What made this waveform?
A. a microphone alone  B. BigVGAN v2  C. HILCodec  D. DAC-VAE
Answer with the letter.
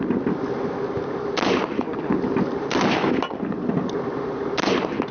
A